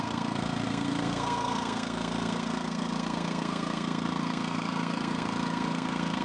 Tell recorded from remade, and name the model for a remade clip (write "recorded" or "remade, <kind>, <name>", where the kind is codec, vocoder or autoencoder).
remade, codec, SNAC